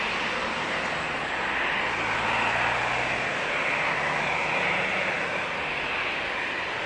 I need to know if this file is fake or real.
real